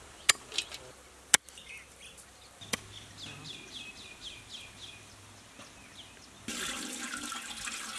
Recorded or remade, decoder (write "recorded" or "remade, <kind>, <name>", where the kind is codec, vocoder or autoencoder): recorded